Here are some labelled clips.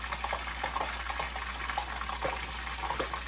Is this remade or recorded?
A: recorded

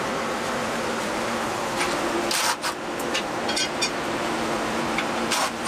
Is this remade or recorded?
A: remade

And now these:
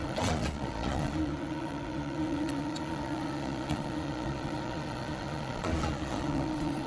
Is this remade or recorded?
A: remade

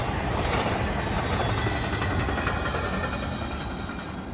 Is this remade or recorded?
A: recorded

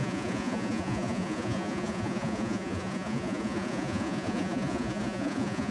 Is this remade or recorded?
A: remade